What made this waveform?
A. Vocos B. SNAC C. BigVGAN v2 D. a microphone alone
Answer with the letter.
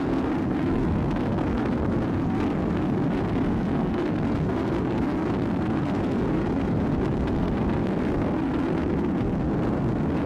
B